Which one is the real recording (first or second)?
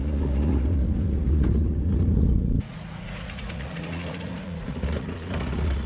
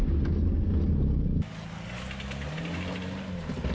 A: second